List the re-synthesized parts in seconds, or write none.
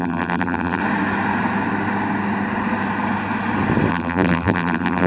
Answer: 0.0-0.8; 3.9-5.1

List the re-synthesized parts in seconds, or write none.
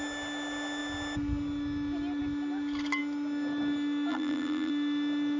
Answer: 4.1-4.7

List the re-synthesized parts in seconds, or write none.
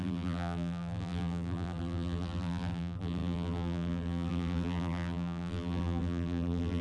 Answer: 0.0-6.8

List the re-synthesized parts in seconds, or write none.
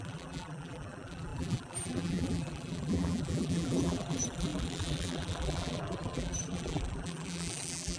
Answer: 0.0-8.0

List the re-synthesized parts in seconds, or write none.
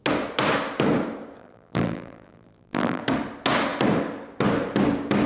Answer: 1.4-3.0